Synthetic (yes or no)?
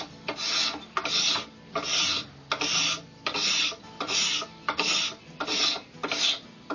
no